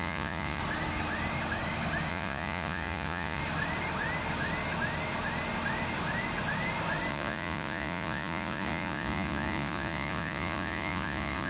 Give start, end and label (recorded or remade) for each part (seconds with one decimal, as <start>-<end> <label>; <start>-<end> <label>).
0.0-0.6 remade; 0.6-2.1 recorded; 2.1-3.4 remade; 3.4-7.1 recorded; 7.1-11.5 remade